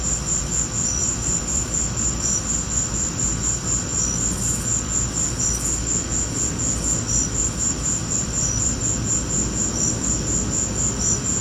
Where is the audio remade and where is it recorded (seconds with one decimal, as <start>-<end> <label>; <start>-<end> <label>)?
0.0-1.0 recorded; 1.0-3.4 remade; 3.4-8.0 recorded; 8.0-8.8 remade; 8.8-11.4 recorded